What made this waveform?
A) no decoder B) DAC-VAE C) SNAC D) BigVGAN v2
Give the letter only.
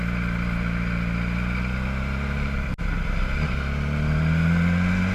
A